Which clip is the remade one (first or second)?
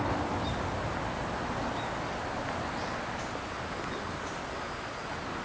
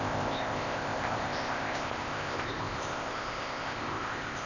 second